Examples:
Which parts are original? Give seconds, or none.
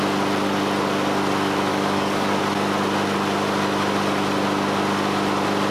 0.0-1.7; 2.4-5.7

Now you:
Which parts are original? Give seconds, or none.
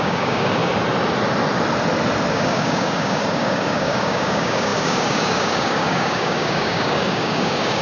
0.6-2.3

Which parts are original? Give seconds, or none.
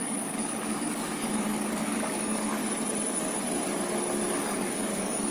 2.6-4.3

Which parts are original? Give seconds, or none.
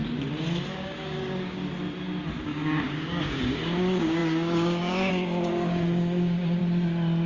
0.0-0.7; 1.6-2.4; 6.6-7.3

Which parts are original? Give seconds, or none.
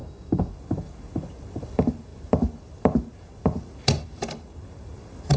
0.5-5.4